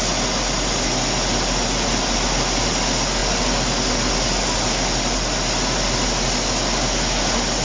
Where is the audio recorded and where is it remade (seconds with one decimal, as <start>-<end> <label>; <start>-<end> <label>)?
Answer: 0.0-7.6 recorded